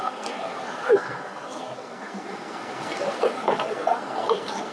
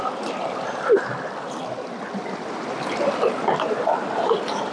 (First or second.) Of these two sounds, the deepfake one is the first